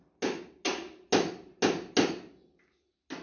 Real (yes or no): yes